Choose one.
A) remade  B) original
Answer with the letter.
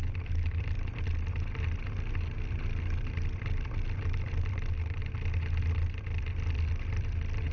A